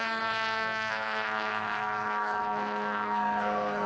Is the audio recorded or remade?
remade